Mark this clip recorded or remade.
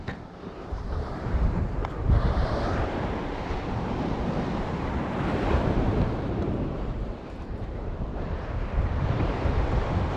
remade